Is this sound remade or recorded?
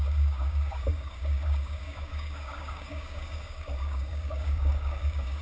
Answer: remade